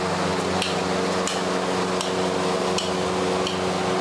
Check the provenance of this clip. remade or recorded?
recorded